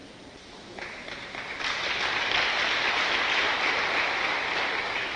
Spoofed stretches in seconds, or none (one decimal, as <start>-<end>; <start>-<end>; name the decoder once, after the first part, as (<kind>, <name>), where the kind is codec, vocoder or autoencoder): none